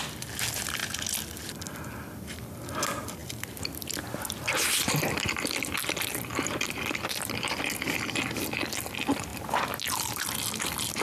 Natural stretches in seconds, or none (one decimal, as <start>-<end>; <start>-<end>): 0.0-3.2; 7.7-11.0